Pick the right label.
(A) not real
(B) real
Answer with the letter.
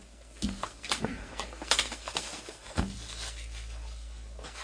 A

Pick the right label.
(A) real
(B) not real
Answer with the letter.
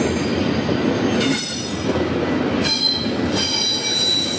A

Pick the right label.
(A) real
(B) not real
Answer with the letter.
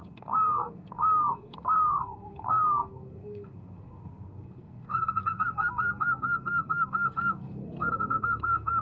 B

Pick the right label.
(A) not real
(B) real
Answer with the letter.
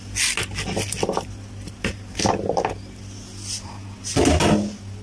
B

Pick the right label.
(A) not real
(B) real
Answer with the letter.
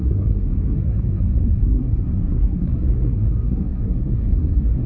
A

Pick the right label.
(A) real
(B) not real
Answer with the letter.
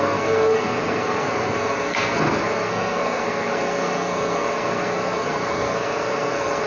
B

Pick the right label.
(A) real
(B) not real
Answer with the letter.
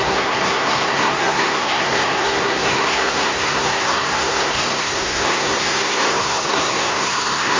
B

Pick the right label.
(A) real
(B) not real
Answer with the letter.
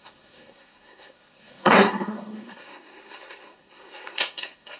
B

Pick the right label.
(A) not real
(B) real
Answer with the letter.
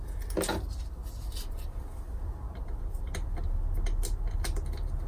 B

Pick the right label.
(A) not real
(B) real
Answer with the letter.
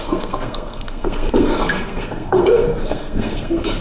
A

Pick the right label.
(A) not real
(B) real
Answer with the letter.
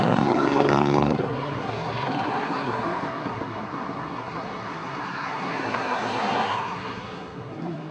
A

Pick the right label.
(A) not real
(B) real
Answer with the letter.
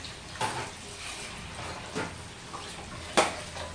B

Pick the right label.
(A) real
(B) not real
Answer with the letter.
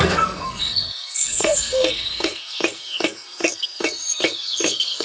B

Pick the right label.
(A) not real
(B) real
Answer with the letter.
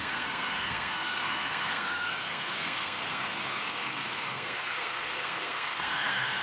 A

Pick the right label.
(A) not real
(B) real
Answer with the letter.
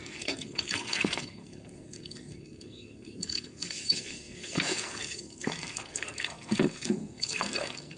A